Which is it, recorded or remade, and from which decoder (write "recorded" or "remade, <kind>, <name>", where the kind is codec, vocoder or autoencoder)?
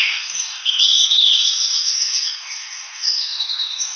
remade, codec, DAC